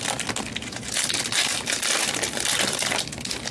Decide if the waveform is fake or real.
real